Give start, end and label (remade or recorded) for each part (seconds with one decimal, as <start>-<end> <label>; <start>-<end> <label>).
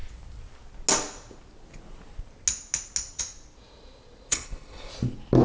0.0-4.3 recorded; 4.3-4.9 remade; 4.9-5.4 recorded